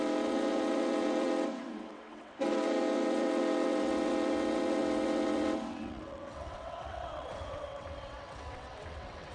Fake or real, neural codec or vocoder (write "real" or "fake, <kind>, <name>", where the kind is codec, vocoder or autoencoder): fake, vocoder, WaveNeXt